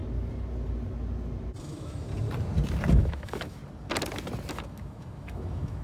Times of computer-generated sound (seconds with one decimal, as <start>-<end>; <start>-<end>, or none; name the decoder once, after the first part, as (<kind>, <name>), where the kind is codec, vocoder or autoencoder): 1.6-2.1 (autoencoder, DAC-VAE); 2.9-3.6; 4.5-5.8